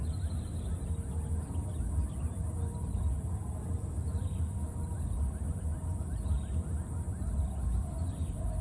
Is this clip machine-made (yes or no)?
no